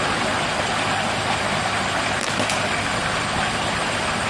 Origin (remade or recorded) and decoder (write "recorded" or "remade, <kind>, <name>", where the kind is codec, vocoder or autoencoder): recorded